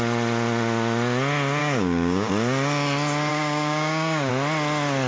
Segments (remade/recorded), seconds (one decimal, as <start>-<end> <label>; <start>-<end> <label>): 0.0-1.6 recorded; 1.6-2.3 remade; 2.3-3.3 recorded; 3.3-4.3 remade; 4.3-5.1 recorded